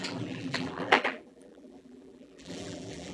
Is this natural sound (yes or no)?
no